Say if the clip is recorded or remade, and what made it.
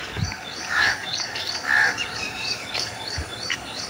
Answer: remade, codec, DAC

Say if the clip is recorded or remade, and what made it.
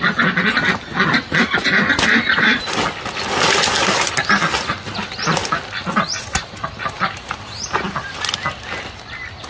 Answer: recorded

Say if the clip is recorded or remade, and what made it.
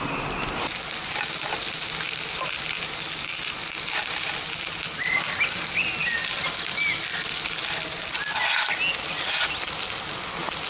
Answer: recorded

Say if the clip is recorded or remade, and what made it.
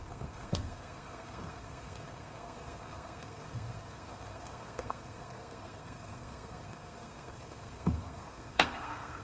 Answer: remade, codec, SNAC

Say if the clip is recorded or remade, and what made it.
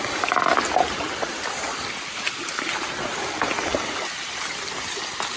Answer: recorded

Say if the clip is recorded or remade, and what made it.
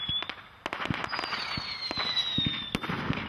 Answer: recorded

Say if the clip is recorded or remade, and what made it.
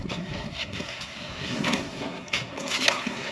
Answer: remade, codec, SNAC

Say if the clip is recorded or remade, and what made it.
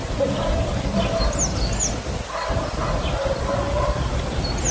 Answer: recorded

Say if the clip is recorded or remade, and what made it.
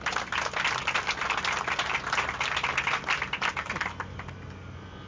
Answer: recorded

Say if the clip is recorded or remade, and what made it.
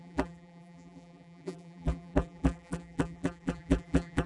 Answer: remade, vocoder, BigVGAN v2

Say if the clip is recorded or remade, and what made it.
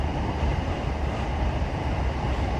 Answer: remade, vocoder, BigVGAN v2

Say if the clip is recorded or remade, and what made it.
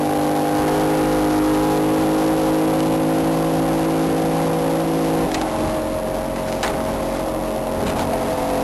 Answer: recorded